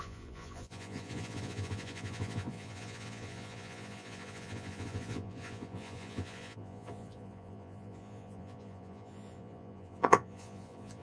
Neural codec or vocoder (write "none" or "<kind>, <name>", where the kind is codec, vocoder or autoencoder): vocoder, Vocos